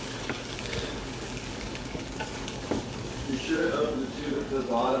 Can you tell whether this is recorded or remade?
remade